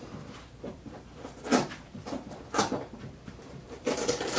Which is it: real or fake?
fake